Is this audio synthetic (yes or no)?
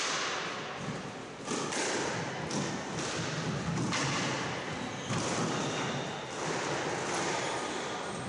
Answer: no